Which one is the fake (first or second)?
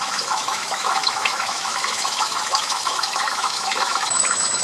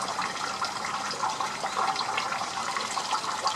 first